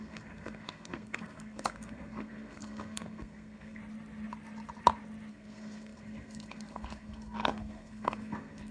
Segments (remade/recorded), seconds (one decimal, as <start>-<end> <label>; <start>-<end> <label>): 0.0-3.8 remade; 3.8-5.3 recorded; 5.3-8.7 remade